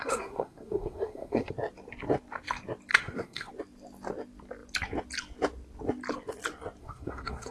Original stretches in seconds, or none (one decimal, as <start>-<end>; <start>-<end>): 1.5-2.9; 3.5-6.8